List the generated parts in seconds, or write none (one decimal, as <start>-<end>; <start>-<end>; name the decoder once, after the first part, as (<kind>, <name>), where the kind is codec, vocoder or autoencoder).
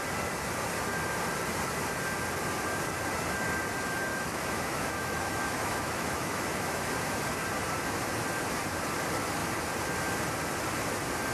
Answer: 4.1-6.8 (autoencoder, DAC-VAE)